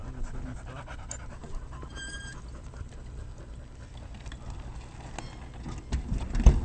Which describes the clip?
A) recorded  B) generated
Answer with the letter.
A